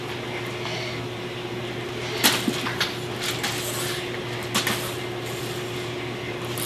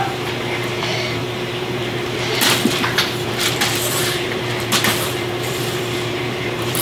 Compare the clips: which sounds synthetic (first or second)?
second